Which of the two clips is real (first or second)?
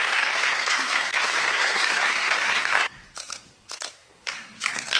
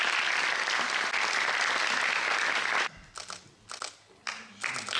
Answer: second